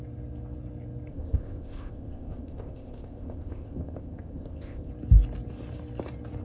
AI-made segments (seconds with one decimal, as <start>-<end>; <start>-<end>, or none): 1.1-4.9